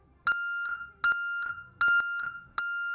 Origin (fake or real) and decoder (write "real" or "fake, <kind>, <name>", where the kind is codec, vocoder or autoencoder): real